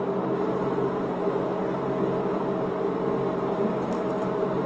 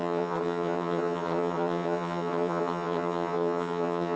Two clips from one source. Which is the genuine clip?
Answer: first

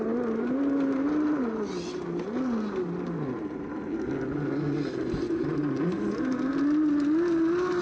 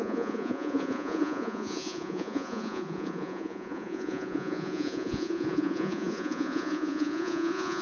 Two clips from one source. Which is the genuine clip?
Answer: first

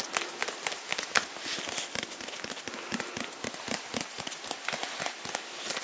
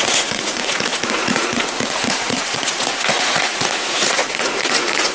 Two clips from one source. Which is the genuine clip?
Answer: first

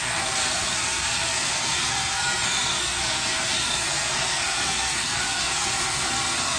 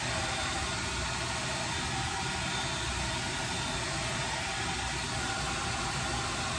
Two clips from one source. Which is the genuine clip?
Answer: second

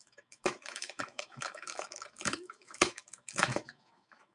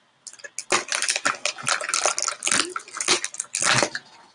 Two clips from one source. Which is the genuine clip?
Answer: second